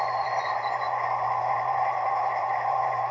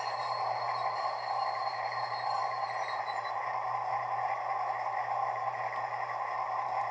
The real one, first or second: second